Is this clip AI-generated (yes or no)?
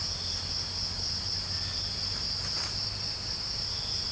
no